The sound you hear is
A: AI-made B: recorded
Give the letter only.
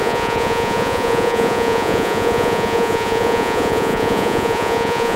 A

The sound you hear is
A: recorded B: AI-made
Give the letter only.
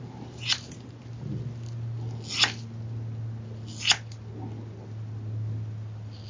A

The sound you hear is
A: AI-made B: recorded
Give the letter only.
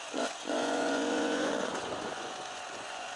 A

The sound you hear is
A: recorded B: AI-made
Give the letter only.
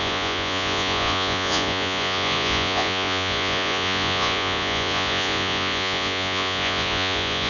B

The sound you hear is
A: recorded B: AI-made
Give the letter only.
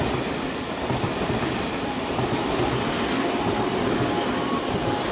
A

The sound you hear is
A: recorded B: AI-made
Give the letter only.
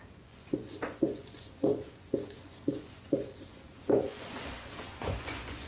B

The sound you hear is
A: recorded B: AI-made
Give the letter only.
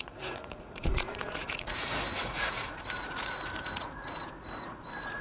B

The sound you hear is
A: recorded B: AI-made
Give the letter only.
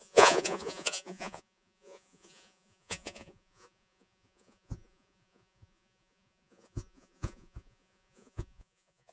B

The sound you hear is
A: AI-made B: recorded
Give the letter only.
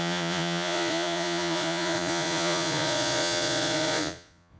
A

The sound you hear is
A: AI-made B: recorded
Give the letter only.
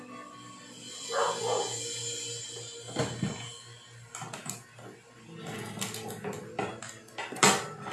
B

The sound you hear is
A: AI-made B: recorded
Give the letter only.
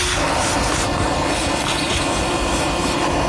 B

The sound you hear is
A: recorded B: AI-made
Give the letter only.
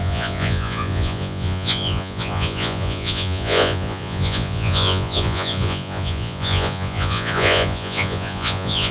B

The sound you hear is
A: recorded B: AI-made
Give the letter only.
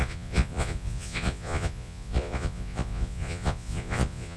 B